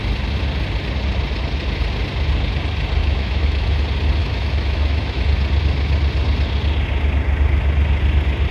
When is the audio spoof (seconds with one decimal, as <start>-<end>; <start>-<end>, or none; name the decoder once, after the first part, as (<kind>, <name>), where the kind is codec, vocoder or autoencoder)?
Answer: 3.0-3.8 (autoencoder, DAC-VAE); 4.2-5.2